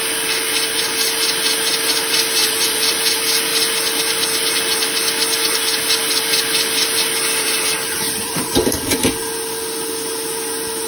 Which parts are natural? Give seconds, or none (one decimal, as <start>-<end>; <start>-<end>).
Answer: 0.0-2.4; 3.1-7.4; 9.0-10.9